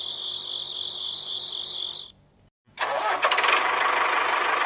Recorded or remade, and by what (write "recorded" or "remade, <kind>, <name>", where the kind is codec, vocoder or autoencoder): recorded